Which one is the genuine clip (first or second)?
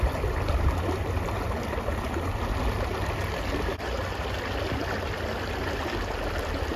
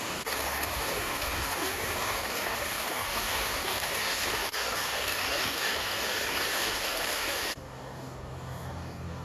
first